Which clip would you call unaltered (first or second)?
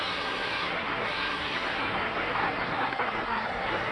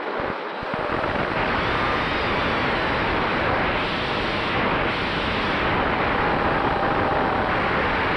second